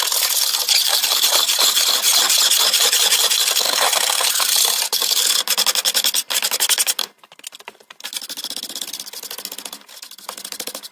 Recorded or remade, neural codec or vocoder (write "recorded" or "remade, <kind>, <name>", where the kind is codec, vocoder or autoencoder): recorded